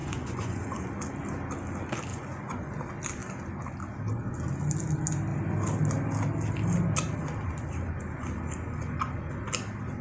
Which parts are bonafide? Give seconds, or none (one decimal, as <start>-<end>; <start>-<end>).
0.9-2.1; 2.7-10.0